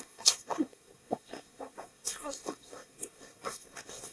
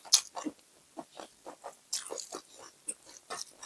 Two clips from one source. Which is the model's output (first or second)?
first